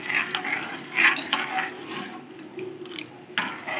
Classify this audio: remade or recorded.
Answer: recorded